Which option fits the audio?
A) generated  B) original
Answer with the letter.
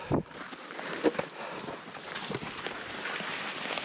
A